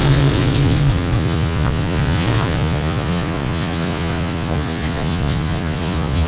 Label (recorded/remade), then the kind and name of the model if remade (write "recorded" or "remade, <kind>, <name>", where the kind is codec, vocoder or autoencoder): remade, vocoder, Vocos